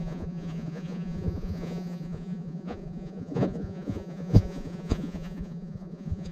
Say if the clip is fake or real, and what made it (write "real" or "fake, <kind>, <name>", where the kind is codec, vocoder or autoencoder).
fake, vocoder, Vocos